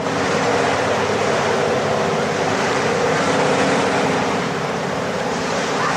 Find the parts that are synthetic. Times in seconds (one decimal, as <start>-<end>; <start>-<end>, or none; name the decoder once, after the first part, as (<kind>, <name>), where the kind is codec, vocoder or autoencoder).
0.0-6.0 (vocoder, BigVGAN v2)

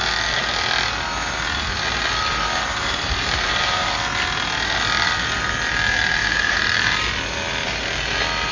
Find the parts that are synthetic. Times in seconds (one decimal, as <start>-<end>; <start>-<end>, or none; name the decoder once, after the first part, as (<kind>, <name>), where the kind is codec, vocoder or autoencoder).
2.3-3.9 (vocoder, BigVGAN v2); 6.2-7.1